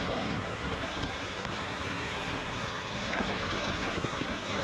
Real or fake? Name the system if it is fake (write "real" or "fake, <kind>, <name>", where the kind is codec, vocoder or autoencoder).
fake, codec, SNAC